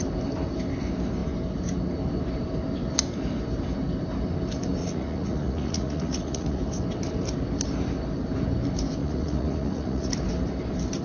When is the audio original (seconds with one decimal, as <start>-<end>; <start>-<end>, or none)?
0.0-4.8; 6.6-9.0; 10.1-11.0